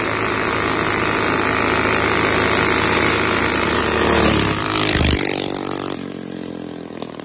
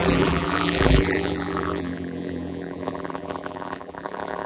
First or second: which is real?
first